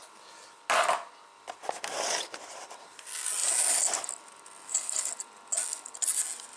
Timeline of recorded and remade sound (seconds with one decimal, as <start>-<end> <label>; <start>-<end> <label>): 0.0-6.6 recorded